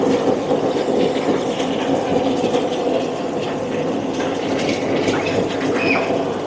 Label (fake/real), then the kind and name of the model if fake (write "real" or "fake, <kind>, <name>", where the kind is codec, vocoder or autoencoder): real